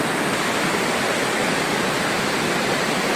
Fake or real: real